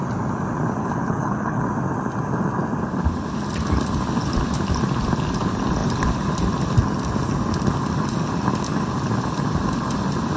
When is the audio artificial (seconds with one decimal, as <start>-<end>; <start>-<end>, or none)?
0.8-1.6